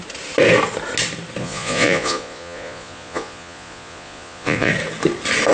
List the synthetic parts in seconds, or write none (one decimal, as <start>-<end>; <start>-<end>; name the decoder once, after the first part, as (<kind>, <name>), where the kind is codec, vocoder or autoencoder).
1.4-4.7 (vocoder, Vocos)